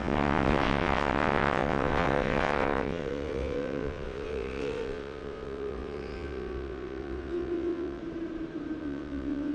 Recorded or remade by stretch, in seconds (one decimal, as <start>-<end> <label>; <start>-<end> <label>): 0.0-8.0 remade; 8.0-8.8 recorded; 8.8-9.5 remade